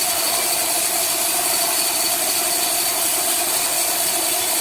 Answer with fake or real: real